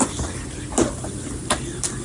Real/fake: real